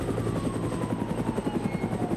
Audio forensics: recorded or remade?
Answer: recorded